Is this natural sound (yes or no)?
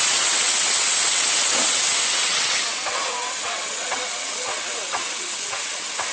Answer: no